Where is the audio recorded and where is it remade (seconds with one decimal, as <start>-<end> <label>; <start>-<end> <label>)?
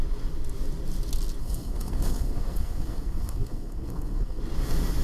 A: 0.0-1.4 recorded; 1.4-4.4 remade; 4.4-5.0 recorded